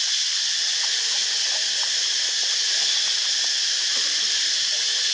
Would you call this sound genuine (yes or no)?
yes